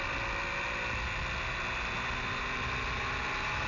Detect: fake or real real